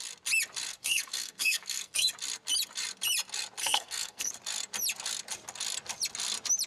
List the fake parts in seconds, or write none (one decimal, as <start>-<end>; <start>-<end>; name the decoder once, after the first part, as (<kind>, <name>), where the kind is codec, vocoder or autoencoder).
0.7-2.1 (codec, SNAC); 3.6-4.3